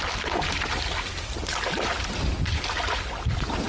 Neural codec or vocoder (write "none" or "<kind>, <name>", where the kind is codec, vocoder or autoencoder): none